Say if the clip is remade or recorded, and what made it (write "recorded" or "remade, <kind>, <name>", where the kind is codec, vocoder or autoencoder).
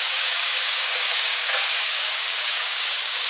remade, codec, DAC